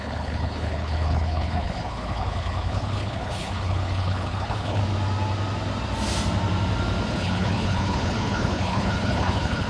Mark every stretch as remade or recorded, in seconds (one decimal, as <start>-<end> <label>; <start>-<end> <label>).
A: 0.0-4.8 remade; 4.8-7.1 recorded; 7.1-9.7 remade